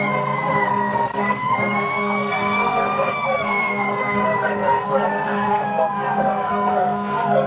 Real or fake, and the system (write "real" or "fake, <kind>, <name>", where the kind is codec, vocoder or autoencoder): fake, codec, SNAC